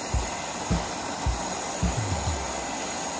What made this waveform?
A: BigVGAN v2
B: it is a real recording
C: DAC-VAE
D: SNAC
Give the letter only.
B